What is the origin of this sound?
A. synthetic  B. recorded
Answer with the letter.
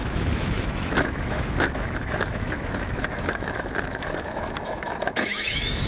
A